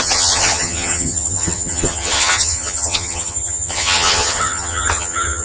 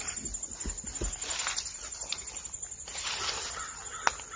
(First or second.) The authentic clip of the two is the second